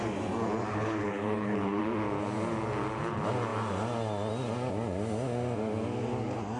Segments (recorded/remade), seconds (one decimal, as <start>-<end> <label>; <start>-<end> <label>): 0.0-0.7 recorded; 0.7-1.8 remade; 1.8-6.6 recorded

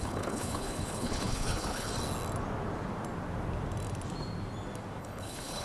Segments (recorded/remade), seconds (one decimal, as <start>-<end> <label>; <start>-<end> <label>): 0.0-1.9 remade; 1.9-5.0 recorded; 5.0-5.6 remade

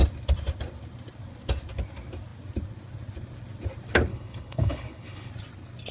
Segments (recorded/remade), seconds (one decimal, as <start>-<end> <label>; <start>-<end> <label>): 0.0-4.1 recorded; 4.1-5.3 remade; 5.3-5.9 recorded